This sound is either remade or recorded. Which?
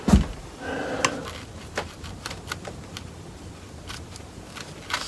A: recorded